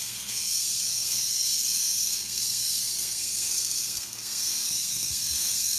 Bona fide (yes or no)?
no